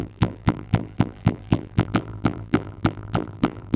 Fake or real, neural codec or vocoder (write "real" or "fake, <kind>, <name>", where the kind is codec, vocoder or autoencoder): fake, vocoder, BigVGAN v2